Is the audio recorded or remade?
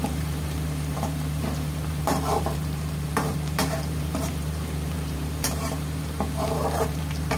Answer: remade